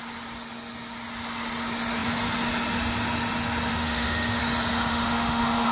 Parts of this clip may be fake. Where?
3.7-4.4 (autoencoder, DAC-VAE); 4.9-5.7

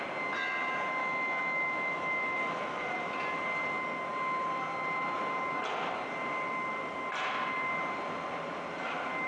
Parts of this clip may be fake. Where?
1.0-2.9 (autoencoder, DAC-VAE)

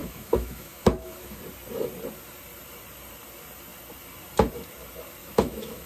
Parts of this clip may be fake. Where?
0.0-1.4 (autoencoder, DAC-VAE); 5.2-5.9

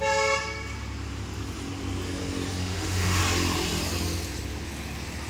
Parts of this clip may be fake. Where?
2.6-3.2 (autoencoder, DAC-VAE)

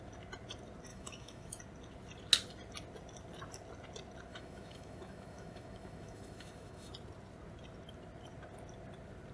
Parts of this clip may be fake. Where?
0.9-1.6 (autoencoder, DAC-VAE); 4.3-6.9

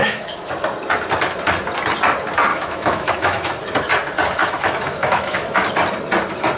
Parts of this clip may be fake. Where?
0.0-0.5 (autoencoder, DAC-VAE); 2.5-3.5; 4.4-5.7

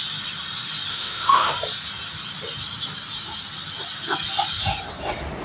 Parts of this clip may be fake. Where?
0.9-1.5 (autoencoder, DAC-VAE)

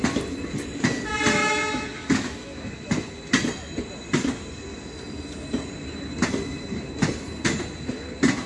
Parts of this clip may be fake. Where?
1.4-2.9 (autoencoder, DAC-VAE)